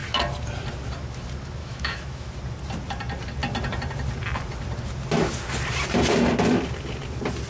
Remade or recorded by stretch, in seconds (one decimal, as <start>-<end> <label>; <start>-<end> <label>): 0.0-1.6 recorded; 1.6-2.3 remade; 2.3-7.5 recorded